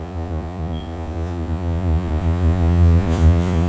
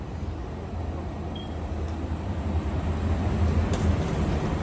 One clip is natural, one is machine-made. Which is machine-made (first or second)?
first